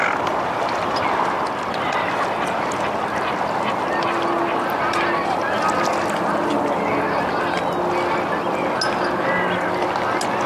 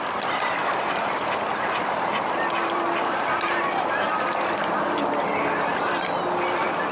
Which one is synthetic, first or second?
second